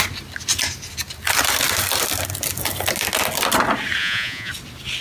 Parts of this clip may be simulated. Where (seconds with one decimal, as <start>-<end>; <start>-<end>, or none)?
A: 4.0-4.5